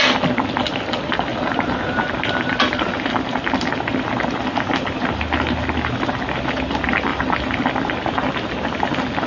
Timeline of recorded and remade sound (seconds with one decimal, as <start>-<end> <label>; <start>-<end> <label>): 0.0-9.3 recorded